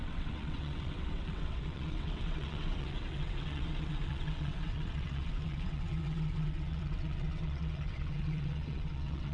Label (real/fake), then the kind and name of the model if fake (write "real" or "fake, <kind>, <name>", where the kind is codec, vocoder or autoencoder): fake, vocoder, WaveNeXt